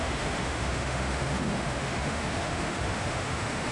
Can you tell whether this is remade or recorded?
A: remade